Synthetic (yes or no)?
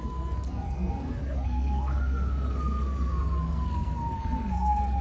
yes